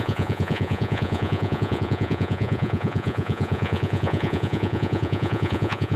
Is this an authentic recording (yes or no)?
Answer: no